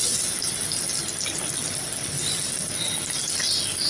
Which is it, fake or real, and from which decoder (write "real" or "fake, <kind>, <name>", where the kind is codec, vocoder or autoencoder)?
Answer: real